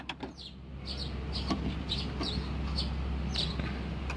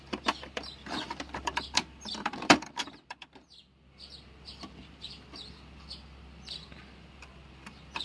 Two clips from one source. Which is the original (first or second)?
first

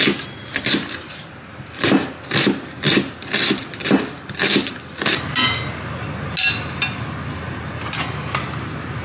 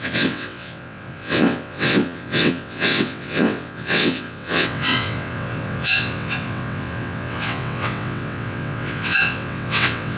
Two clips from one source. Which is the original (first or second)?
first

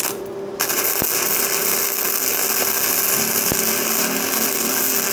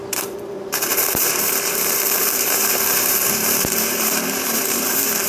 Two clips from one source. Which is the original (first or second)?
first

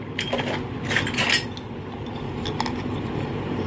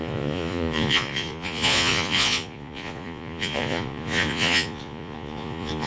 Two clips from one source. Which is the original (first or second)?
first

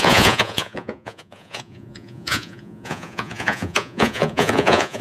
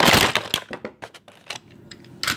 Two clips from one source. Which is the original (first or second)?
second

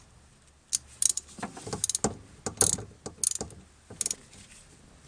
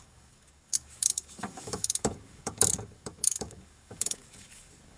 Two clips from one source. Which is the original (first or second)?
first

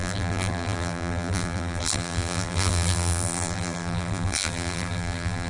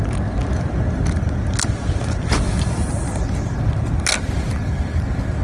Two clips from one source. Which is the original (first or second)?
second